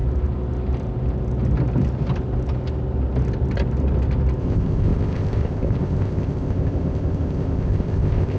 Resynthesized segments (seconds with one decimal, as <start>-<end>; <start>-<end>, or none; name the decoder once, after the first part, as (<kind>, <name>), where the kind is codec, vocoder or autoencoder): 4.4-8.4 (codec, ZipCodec)